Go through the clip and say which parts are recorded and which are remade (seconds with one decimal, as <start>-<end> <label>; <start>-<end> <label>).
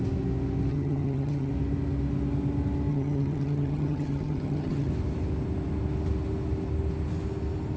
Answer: 0.0-0.7 recorded; 0.7-1.5 remade; 1.5-2.9 recorded; 2.9-4.9 remade; 4.9-7.8 recorded